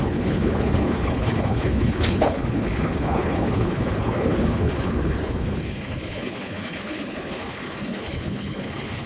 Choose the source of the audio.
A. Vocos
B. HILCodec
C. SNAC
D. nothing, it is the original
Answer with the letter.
B